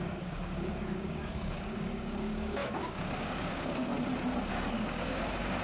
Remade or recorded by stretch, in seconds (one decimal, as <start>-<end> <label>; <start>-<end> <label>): 0.0-3.9 remade; 3.9-4.5 recorded; 4.5-5.6 remade